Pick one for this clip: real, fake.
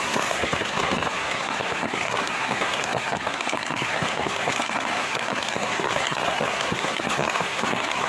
fake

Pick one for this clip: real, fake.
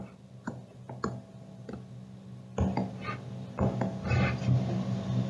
real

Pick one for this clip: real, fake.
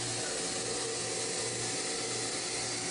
real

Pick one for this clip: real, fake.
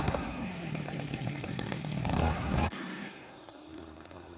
fake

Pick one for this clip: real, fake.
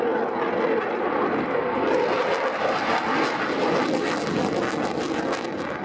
real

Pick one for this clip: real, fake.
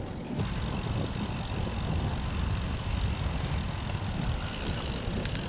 real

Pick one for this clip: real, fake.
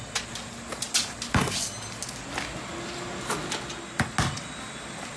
real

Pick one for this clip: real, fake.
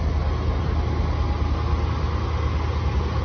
real